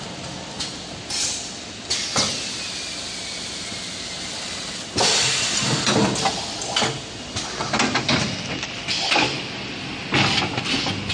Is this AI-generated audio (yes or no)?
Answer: no